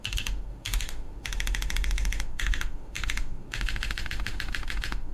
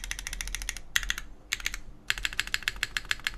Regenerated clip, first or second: first